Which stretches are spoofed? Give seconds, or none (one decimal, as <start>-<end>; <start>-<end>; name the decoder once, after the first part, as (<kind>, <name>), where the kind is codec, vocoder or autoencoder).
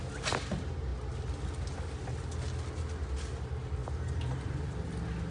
none